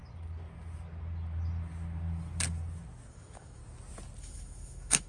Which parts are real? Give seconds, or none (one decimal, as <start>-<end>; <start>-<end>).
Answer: 0.0-3.1; 3.6-4.2